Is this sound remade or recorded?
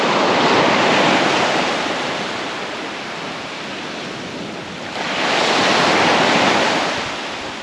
recorded